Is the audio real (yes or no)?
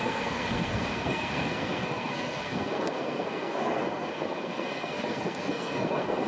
no